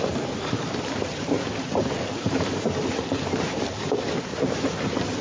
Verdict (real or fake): fake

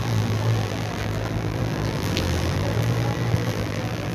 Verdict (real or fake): fake